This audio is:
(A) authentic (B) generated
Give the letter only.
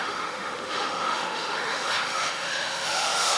B